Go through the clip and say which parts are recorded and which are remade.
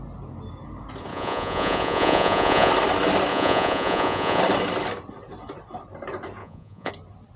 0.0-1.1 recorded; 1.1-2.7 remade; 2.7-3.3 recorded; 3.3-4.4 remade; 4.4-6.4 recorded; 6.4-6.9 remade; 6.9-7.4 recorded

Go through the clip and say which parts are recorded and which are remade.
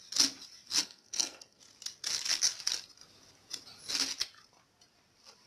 0.0-0.8 recorded; 0.8-1.6 remade; 1.6-5.5 recorded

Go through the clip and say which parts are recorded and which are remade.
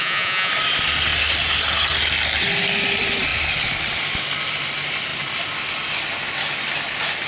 0.0-0.5 remade; 0.5-7.3 recorded